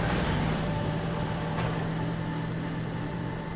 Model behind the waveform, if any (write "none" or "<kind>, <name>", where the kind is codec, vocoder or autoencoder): none